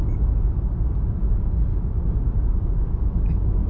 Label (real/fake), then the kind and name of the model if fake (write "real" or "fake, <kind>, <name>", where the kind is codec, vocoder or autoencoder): fake, vocoder, BigVGAN v2